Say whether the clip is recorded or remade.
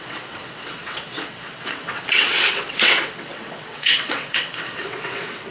remade